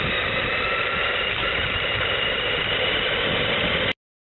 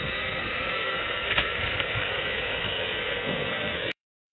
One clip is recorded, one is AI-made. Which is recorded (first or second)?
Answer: first